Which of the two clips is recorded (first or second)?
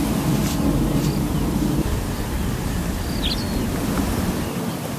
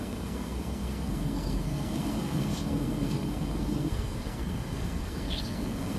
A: first